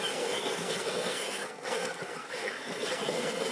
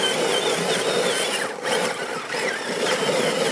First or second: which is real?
second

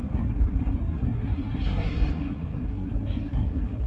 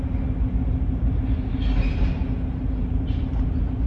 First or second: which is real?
second